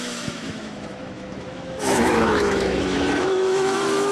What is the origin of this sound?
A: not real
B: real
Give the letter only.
A